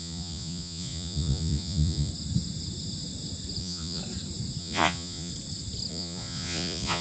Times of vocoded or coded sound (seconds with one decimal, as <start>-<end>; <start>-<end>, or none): 0.0-2.1; 3.6-4.0; 4.6-5.3; 5.9-7.0